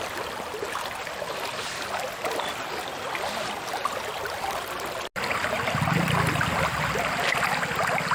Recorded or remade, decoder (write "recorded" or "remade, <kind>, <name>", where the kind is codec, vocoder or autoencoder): recorded